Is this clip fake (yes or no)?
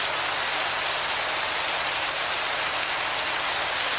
no